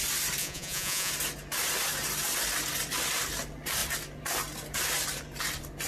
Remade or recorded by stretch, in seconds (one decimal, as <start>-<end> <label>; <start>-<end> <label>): 0.0-0.4 recorded; 0.4-1.1 remade; 1.1-5.9 recorded

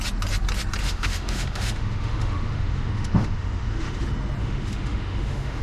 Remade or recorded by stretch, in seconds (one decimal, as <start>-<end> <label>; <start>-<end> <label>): 0.0-0.8 recorded; 0.8-4.0 remade; 4.0-4.4 recorded; 4.4-5.6 remade

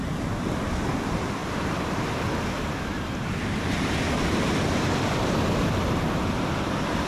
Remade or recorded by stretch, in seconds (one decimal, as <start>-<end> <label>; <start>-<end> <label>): 0.0-1.4 recorded; 1.4-2.0 remade; 2.0-7.1 recorded

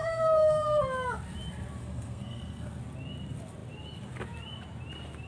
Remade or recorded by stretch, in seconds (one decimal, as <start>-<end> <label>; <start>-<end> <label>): 0.0-0.8 remade; 0.8-1.8 recorded; 1.8-2.8 remade; 2.8-5.3 recorded

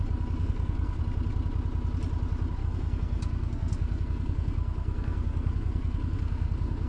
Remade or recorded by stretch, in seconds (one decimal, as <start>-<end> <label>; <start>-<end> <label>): 0.0-0.4 recorded; 0.4-1.0 remade; 1.0-2.6 recorded; 2.6-6.9 remade

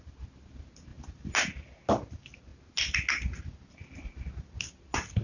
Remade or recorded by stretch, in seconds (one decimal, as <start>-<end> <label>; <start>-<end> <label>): 0.0-5.2 recorded

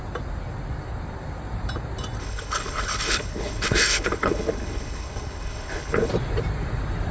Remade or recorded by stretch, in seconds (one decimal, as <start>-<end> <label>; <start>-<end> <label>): 0.0-2.2 recorded; 2.2-6.1 remade; 6.1-7.1 recorded

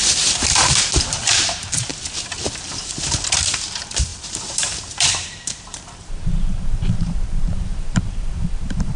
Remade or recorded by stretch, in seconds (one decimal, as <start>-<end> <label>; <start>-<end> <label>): 0.0-1.9 remade; 1.9-3.5 recorded; 3.5-9.0 remade